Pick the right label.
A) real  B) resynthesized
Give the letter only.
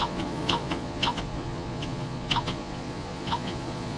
B